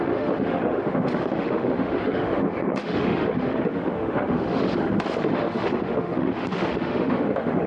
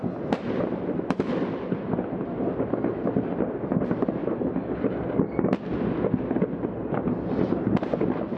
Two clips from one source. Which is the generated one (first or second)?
first